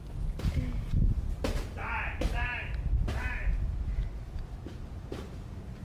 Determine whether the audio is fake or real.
real